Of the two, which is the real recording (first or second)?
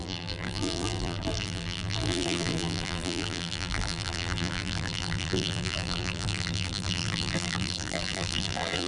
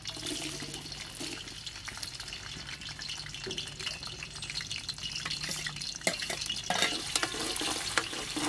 second